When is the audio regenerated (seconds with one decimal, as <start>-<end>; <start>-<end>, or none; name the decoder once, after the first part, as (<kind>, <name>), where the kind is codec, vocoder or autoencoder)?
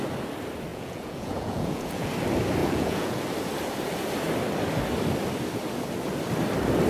0.7-2.1 (vocoder, Vocos); 2.6-3.2